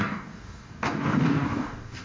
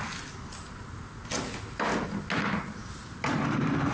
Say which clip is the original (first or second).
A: second